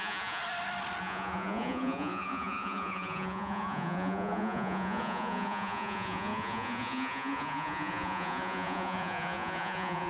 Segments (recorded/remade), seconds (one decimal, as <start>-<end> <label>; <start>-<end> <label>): 0.0-0.4 remade; 0.4-1.0 recorded; 1.0-10.1 remade